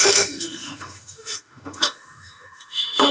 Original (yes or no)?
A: no